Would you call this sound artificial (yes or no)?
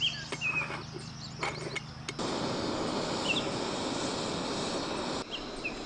no